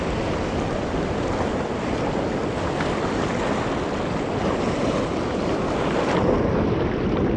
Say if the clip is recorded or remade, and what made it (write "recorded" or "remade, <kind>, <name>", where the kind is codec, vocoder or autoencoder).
recorded